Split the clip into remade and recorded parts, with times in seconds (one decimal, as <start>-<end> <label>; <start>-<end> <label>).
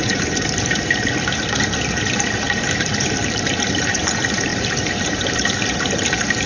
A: 0.0-6.5 remade